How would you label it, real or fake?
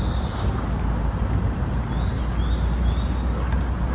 real